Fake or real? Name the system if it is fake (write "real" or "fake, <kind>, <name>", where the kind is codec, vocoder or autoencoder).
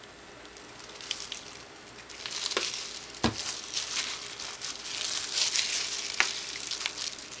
real